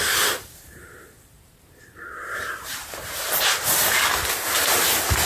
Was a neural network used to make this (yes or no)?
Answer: yes